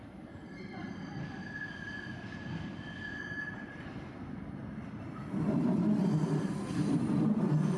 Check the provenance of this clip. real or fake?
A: real